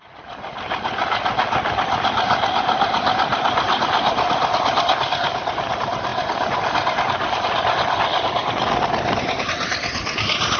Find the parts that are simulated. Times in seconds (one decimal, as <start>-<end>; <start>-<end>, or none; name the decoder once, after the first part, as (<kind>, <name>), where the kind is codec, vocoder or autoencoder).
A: none